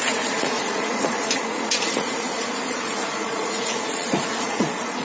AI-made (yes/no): yes